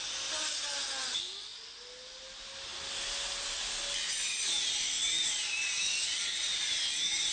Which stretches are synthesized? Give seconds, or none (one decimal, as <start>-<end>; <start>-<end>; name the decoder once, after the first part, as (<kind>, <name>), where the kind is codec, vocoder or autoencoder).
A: none